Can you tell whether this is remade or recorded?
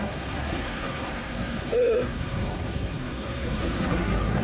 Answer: remade